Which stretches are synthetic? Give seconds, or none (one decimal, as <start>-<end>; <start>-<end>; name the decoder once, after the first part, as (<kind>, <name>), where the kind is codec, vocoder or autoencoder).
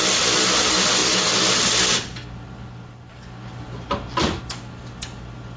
none